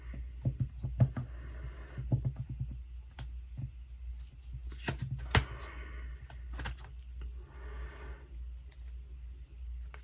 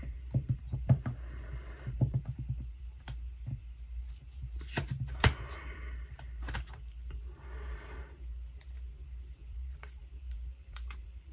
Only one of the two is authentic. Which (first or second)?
first